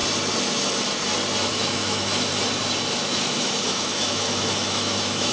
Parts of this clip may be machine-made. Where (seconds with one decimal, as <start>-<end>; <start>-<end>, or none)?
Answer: 1.5-2.3; 2.9-5.3